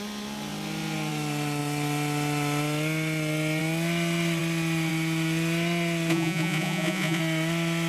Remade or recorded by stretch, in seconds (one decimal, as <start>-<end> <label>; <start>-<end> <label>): 0.0-6.1 recorded; 6.1-7.2 remade; 7.2-7.9 recorded